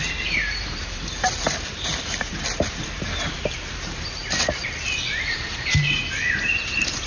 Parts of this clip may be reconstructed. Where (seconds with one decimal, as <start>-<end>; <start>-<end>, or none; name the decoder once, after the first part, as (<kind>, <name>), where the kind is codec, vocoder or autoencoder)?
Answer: 0.0-7.1 (vocoder, BigVGAN v2)